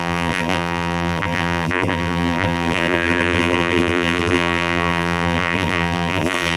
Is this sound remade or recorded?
remade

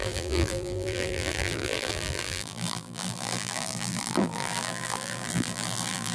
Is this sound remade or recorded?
remade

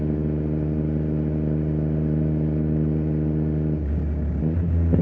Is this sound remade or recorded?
recorded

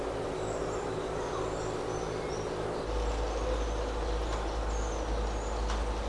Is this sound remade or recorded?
recorded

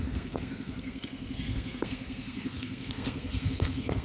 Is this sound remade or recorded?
remade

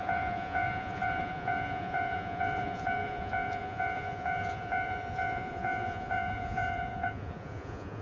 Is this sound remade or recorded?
remade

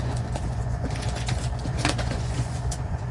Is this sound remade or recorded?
remade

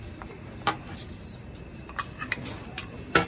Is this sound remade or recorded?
recorded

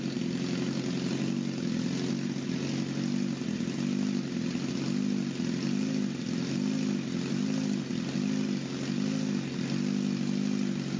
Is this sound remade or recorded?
recorded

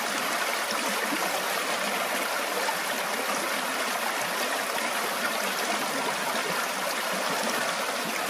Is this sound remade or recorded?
recorded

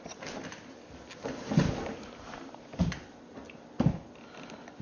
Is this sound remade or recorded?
recorded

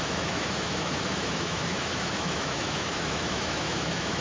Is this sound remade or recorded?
remade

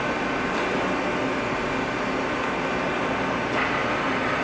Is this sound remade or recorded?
recorded